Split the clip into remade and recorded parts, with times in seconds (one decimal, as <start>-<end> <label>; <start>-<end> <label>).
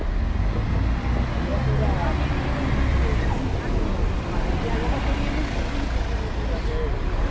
0.0-7.3 recorded